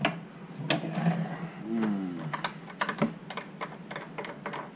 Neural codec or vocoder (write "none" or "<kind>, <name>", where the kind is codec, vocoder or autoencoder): none